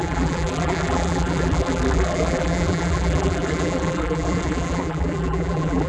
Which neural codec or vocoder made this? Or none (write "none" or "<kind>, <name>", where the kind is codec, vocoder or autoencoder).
vocoder, BigVGAN v2